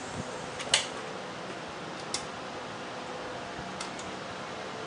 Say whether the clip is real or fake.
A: real